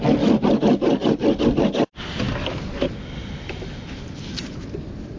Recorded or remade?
recorded